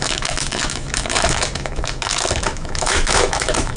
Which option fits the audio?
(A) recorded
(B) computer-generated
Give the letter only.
B